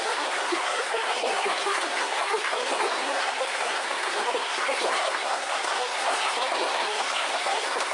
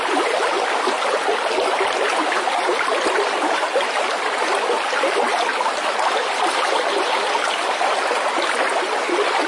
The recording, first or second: second